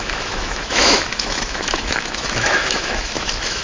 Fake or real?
fake